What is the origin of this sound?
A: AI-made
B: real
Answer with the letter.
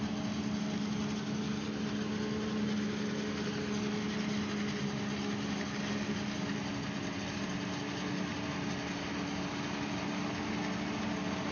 B